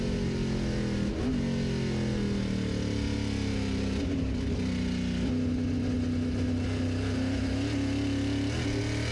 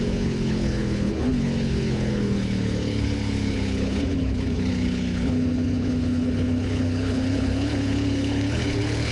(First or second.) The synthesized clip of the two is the second